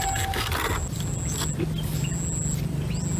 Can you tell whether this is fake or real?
real